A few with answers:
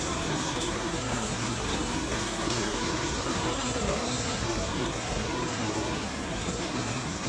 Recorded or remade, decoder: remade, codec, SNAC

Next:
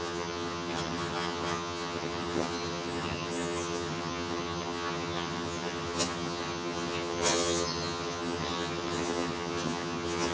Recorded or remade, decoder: remade, vocoder, HiFi-GAN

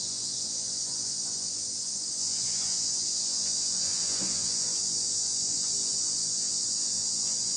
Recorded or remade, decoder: remade, vocoder, Vocos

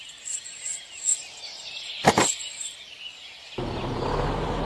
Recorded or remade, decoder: recorded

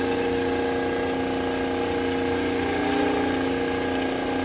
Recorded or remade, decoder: recorded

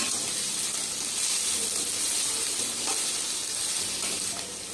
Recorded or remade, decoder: recorded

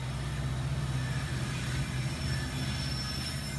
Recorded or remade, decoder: recorded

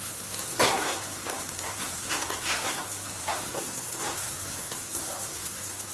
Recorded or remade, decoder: remade, codec, SNAC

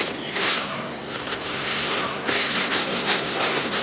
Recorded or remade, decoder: remade, codec, SNAC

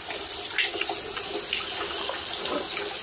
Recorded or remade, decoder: recorded